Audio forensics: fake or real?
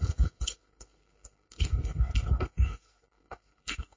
fake